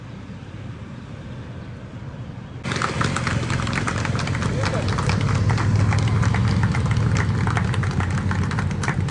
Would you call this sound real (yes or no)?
yes